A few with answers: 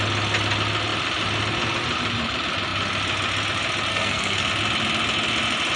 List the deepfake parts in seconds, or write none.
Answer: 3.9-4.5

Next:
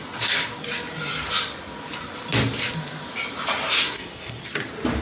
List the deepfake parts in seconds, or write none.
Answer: 3.7-4.4